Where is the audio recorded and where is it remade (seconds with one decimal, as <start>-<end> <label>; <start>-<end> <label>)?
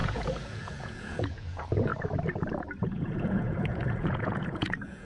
0.0-1.9 remade; 1.9-2.8 recorded; 2.8-5.0 remade